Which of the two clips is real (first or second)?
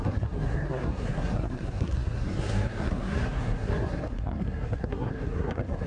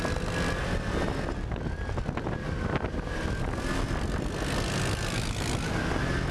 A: second